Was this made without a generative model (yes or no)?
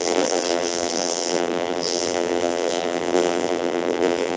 no